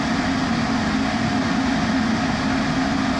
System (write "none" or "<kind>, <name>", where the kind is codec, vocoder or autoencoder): none